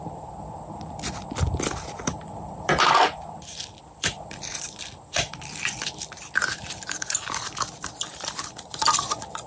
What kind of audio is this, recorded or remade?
remade